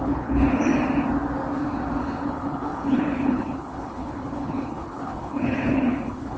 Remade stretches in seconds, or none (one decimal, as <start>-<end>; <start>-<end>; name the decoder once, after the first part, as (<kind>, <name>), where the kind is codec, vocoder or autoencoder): 0.0-0.7 (codec, HILCodec); 2.0-6.4